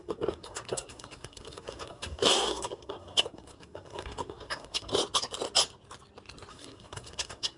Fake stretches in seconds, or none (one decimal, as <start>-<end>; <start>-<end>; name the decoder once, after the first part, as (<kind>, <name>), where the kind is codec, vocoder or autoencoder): 0.0-4.9 (codec, SNAC); 6.5-7.6